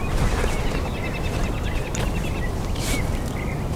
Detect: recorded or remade recorded